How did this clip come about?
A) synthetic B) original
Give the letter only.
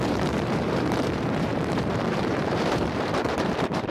A